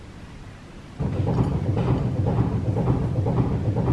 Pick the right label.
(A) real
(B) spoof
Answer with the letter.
A